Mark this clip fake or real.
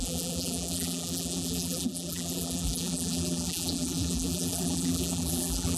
fake